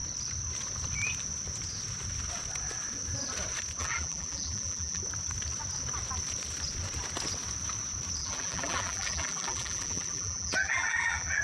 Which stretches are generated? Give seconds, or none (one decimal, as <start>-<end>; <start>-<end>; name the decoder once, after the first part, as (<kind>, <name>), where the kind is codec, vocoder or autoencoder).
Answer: 3.8-5.0 (vocoder, BigVGAN v2); 8.2-11.4